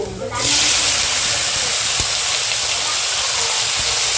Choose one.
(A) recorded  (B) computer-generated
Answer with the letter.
A